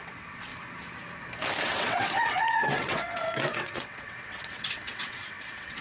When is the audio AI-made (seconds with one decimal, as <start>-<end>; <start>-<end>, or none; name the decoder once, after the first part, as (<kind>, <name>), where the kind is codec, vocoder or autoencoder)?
0.0-0.5 (vocoder, WaveNeXt); 1.6-5.8